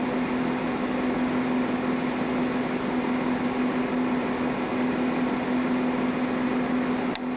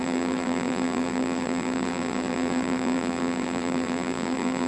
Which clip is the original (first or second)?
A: first